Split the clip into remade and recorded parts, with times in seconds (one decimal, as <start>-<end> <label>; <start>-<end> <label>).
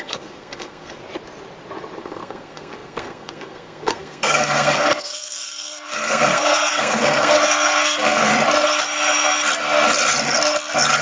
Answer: 0.0-1.0 remade; 1.0-2.0 recorded; 2.0-8.3 remade; 8.3-11.0 recorded